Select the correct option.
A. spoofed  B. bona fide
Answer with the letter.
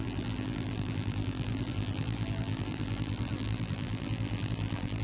A